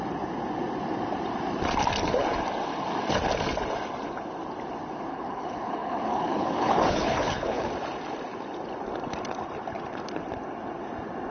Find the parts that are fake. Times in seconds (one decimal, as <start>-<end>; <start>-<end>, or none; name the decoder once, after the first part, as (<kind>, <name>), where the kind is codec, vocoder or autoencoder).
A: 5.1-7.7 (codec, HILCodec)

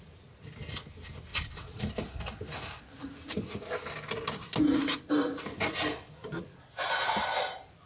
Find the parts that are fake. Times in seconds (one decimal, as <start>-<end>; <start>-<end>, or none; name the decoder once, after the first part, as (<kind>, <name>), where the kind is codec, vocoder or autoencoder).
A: 1.3-1.8 (vocoder, WaveNeXt)

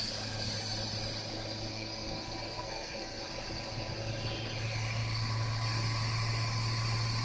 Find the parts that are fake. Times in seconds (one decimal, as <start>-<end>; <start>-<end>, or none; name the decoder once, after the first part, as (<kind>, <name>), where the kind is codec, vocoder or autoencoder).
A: 1.7-3.2 (codec, SNAC)